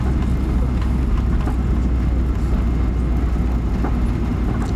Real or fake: real